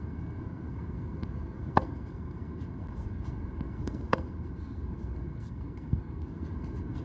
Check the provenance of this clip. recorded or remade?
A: remade